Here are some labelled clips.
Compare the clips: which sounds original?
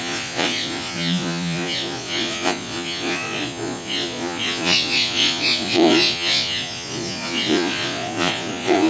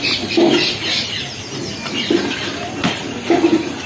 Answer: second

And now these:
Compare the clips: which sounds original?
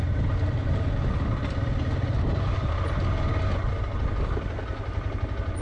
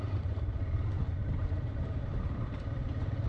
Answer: first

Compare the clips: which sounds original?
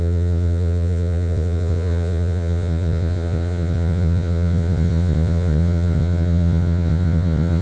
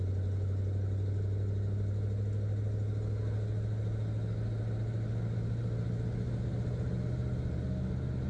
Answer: second